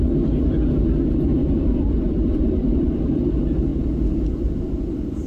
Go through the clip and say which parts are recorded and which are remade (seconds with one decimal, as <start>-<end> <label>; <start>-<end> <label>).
0.0-1.4 recorded; 1.4-2.6 remade; 2.6-5.3 recorded